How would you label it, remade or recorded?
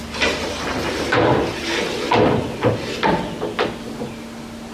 recorded